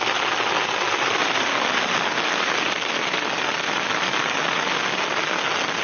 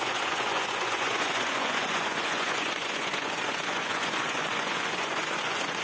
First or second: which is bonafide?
first